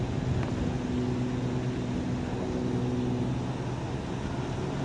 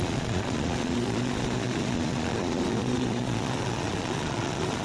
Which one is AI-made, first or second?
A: second